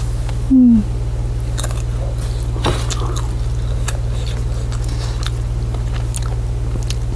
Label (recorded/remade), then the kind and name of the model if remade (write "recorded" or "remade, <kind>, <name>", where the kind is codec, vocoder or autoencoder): recorded